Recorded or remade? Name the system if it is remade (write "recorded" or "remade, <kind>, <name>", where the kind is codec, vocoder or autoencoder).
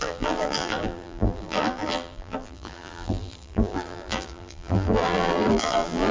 remade, vocoder, BigVGAN v2